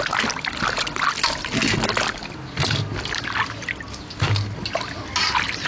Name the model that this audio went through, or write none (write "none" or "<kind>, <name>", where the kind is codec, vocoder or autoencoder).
none